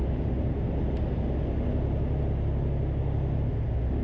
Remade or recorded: recorded